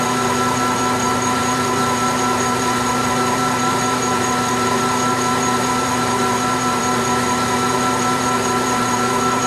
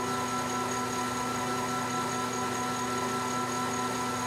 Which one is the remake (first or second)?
first